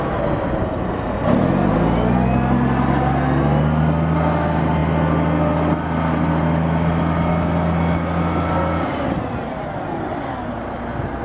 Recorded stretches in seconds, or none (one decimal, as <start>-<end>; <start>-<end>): 0.0-11.2